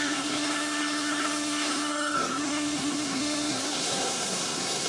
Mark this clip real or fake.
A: fake